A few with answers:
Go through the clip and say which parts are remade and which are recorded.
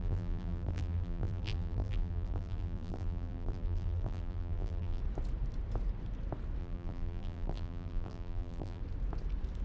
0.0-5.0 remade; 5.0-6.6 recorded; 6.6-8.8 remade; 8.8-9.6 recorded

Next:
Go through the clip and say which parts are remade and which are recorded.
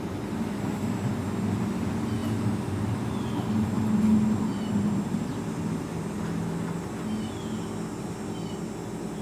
0.0-9.2 recorded